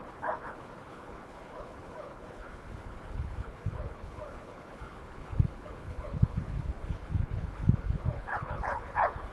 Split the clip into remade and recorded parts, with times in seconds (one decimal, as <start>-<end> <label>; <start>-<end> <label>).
0.0-9.3 remade